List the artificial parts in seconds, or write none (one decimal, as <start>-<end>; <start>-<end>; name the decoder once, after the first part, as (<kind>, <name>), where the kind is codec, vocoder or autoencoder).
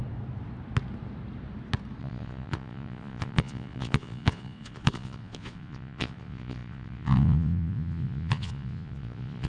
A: 2.0-9.5 (vocoder, Vocos)